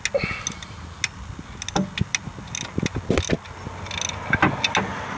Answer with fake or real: real